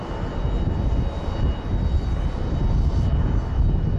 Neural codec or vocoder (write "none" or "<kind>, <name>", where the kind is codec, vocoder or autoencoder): none